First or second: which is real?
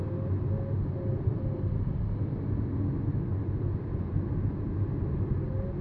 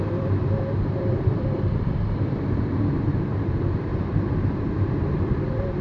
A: first